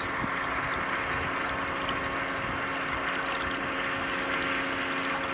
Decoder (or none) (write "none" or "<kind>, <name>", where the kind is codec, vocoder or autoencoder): none